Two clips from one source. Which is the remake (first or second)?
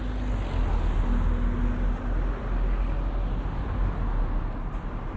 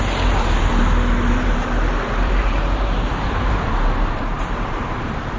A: second